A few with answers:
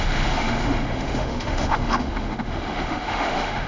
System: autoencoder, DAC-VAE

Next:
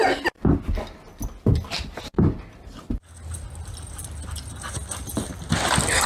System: none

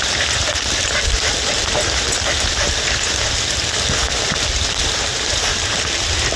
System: none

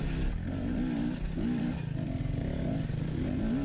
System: none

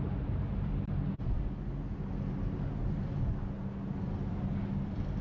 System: none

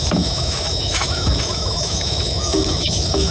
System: autoencoder, DAC-VAE